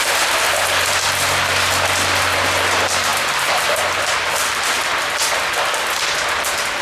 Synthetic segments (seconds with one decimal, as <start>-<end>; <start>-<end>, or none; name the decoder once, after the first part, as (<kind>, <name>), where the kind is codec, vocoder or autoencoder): none